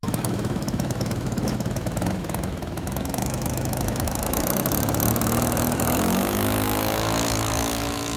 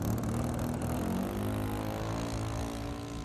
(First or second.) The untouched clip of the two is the second